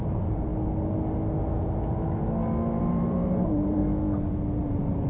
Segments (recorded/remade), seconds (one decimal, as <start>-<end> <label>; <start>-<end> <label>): 0.0-0.5 remade; 0.5-2.8 recorded; 2.8-3.8 remade; 3.8-4.6 recorded; 4.6-5.1 remade